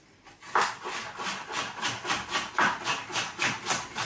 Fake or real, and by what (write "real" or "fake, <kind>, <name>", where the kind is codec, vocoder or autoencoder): real